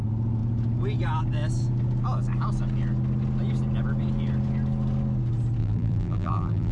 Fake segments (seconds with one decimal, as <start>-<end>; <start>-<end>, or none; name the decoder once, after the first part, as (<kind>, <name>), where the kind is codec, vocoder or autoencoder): 5.6-6.7 (vocoder, BigVGAN v2)

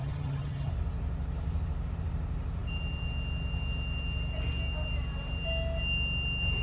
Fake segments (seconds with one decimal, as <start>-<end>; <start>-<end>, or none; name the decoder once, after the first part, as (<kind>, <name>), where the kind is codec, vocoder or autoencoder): 0.0-0.7 (vocoder, HiFi-GAN)

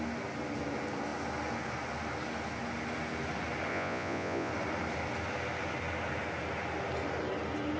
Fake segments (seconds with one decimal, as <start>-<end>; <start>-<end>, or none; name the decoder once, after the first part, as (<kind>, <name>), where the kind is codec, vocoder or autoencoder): 3.7-4.5 (vocoder, Vocos)

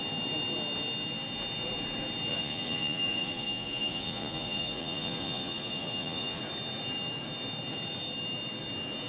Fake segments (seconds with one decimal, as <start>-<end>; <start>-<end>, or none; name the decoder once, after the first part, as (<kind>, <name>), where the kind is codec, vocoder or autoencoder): 2.3-6.4 (vocoder, Vocos)